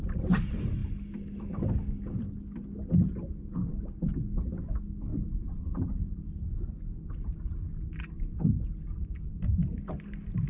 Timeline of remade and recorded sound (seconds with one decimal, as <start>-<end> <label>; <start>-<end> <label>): 0.0-5.1 recorded; 5.1-6.7 remade; 6.7-10.5 recorded